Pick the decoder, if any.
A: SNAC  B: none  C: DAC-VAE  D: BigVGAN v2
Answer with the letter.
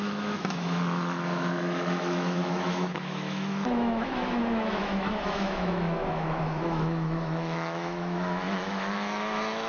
C